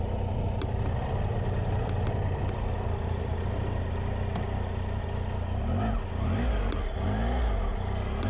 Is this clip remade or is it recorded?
recorded